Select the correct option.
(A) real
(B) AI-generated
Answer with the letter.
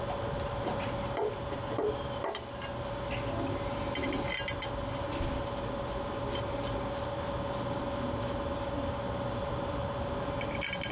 A